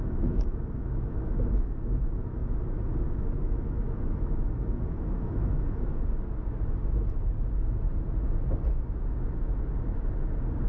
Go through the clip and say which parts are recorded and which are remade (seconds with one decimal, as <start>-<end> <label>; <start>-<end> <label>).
0.0-5.9 remade; 5.9-10.7 recorded

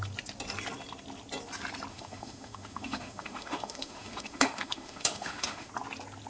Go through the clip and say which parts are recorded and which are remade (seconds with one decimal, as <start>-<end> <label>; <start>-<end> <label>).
0.0-1.9 recorded; 1.9-5.7 remade; 5.7-6.3 recorded

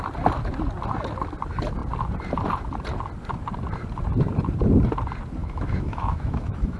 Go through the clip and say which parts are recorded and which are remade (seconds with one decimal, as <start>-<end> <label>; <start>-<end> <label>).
0.0-5.4 recorded; 5.4-6.8 remade

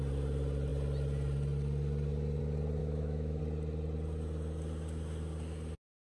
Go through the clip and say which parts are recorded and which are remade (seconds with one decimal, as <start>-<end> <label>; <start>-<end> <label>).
0.0-2.8 recorded; 2.8-3.4 remade; 3.4-6.1 recorded

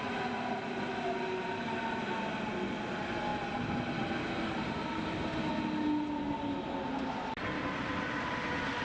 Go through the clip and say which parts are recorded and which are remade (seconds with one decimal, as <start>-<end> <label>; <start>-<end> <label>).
0.0-8.8 recorded

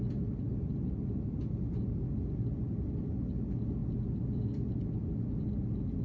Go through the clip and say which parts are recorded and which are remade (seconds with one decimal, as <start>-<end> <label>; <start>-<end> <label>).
0.0-6.0 recorded